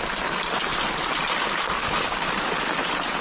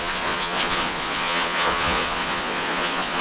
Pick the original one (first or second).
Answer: first